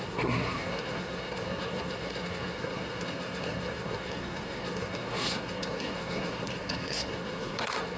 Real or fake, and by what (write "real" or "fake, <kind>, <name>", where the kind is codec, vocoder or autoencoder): fake, codec, SNAC